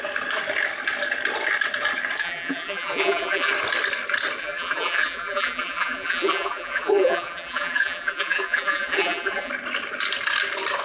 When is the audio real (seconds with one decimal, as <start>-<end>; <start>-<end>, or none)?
0.0-2.2; 3.5-4.4; 9.5-10.8